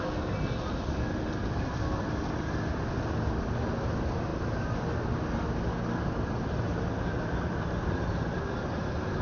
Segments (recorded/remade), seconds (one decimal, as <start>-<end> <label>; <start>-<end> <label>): 0.0-9.2 recorded